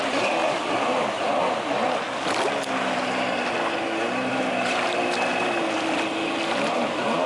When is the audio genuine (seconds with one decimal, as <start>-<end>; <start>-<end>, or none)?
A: 0.0-7.3